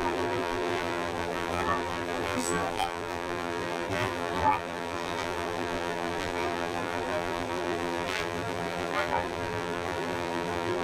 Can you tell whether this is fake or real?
fake